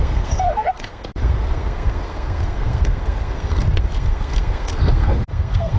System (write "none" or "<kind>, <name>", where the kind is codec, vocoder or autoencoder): codec, SNAC